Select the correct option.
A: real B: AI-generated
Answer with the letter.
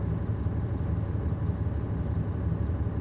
A